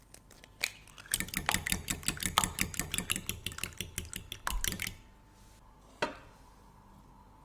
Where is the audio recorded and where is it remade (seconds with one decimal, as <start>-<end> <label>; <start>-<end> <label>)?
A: 0.0-7.4 recorded